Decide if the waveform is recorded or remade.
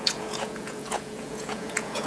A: remade